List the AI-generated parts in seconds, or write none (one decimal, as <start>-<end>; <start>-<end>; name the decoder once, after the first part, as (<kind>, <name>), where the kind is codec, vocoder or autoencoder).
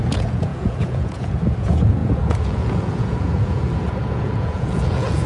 0.0-5.3 (vocoder, Vocos)